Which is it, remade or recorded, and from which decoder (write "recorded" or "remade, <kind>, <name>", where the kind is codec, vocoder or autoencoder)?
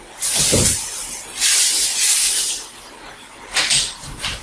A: recorded